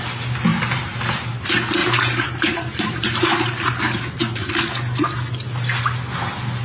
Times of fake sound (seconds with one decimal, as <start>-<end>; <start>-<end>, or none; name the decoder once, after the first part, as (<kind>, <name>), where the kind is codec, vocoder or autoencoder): 0.5-1.4 (vocoder, BigVGAN v2); 1.8-4.5